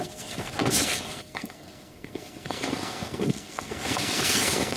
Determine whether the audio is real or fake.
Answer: fake